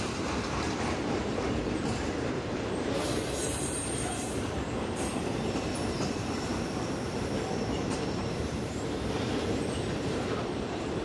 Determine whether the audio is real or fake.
fake